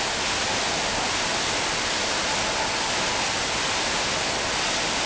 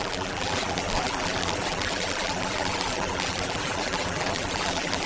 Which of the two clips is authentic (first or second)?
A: first